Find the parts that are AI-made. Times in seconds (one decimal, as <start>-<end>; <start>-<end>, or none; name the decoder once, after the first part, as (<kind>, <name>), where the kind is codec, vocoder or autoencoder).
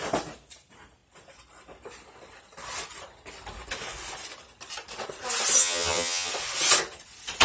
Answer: 5.6-6.3 (vocoder, HiFi-GAN)